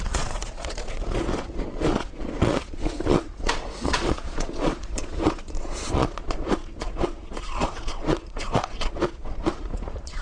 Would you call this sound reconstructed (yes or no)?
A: yes